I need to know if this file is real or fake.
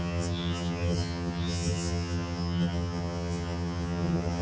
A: fake